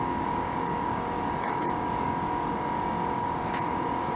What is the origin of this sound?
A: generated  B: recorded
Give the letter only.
A